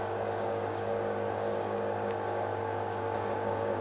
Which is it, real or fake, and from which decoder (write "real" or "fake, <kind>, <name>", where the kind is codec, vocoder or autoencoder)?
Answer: fake, codec, DAC